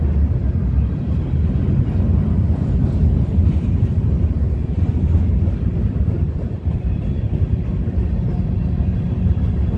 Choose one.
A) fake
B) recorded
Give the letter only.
B